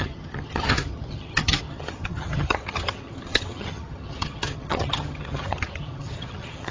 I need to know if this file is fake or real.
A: fake